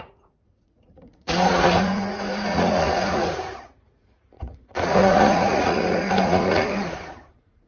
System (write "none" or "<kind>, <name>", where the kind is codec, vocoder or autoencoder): vocoder, Vocos